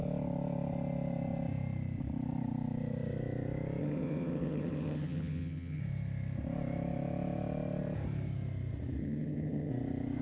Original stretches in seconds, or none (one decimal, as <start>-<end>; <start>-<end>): 0.0-3.8; 5.8-9.0; 9.7-10.2